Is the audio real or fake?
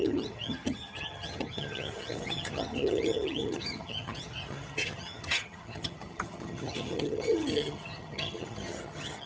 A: fake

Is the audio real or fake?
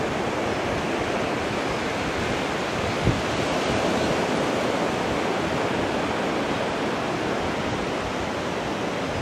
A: real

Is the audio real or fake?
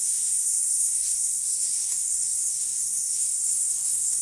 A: fake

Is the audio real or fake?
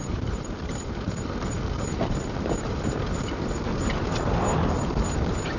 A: fake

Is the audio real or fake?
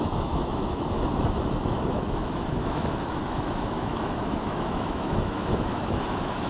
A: fake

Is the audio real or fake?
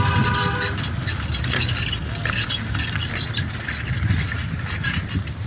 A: real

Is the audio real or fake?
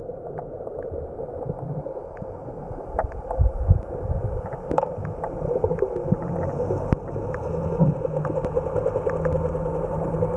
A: real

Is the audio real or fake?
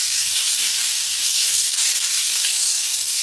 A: fake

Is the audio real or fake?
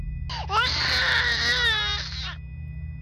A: real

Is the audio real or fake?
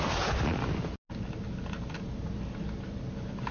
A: real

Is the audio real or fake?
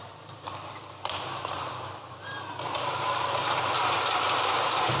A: fake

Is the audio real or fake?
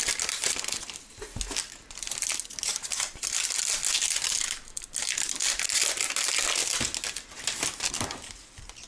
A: real